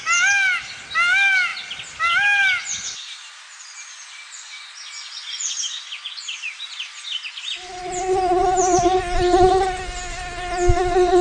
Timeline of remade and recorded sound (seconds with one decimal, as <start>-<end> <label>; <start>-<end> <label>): 0.0-11.2 recorded